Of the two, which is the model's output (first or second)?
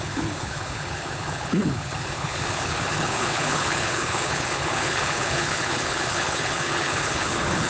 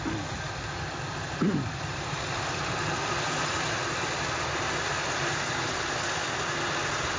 first